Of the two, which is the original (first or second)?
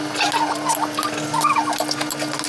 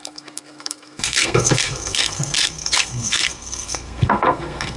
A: first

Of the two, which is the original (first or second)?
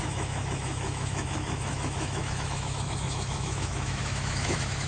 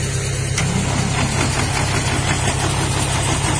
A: second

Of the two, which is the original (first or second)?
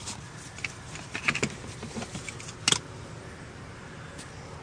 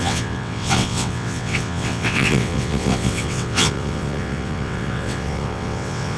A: first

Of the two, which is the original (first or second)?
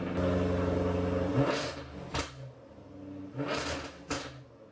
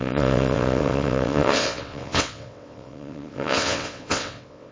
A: first